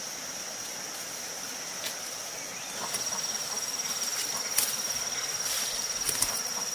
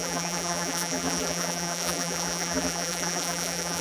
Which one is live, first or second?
first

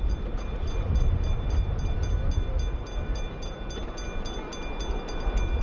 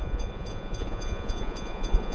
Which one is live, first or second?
first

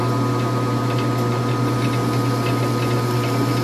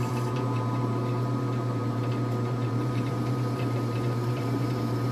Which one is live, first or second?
first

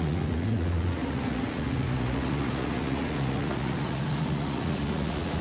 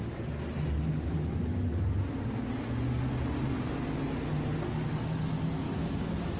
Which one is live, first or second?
second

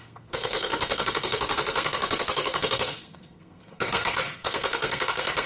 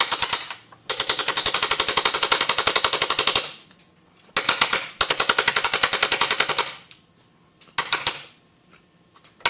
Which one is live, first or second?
second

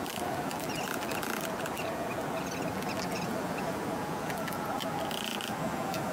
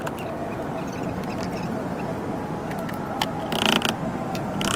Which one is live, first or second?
second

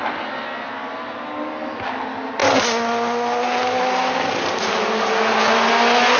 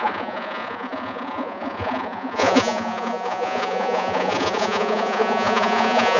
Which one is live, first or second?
first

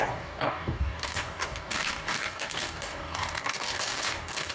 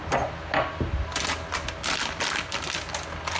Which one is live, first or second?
second